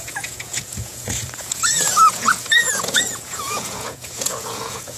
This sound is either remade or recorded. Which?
remade